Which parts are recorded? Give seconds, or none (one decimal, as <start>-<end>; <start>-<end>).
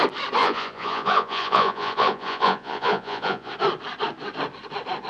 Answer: 0.0-0.4; 3.5-5.1